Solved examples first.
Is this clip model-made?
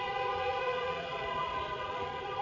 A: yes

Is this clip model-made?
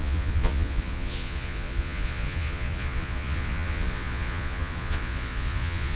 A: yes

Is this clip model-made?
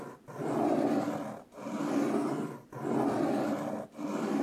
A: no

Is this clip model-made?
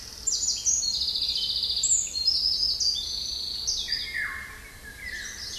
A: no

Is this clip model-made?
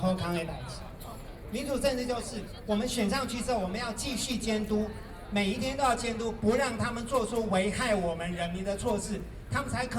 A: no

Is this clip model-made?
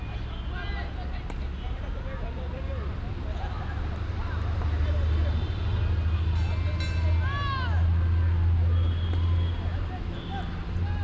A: no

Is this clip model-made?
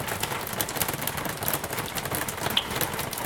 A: no